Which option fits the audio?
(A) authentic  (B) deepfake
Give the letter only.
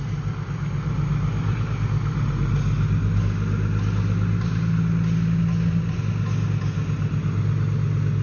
A